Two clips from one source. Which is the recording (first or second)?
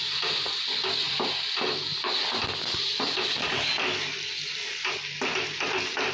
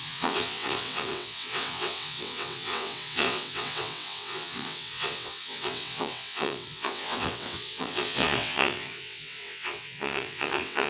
first